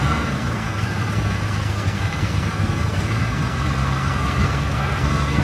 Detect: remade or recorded remade